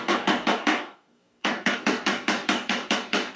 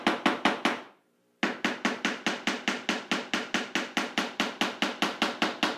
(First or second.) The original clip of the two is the second